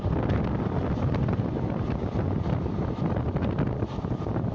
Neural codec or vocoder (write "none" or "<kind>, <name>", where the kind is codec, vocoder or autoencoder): none